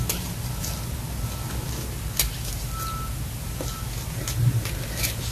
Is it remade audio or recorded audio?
recorded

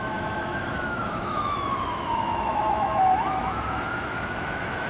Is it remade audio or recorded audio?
remade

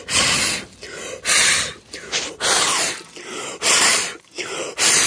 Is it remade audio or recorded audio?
recorded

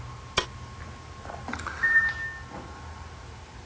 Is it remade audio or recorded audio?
recorded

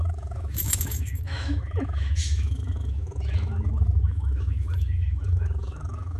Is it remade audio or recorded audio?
remade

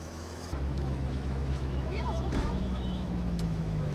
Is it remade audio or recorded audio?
remade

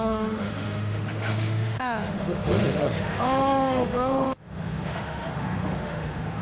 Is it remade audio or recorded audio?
remade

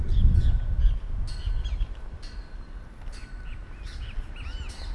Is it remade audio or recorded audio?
recorded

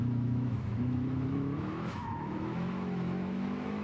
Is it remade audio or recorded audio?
remade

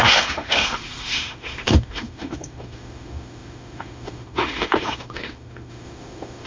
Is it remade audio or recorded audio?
remade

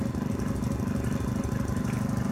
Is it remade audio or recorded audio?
recorded